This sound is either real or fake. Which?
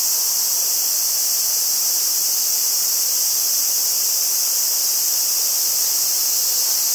fake